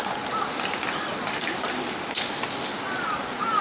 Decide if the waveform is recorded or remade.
recorded